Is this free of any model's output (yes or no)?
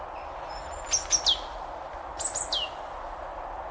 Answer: yes